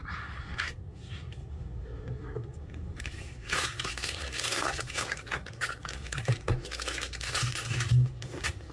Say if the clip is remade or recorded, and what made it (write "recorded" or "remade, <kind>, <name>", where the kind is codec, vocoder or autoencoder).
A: remade, codec, SNAC